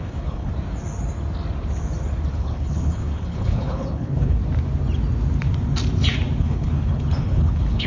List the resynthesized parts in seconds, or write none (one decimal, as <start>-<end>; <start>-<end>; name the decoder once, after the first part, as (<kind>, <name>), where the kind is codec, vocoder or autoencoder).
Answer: 0.0-0.5 (codec, HILCodec); 2.3-4.4; 6.4-7.9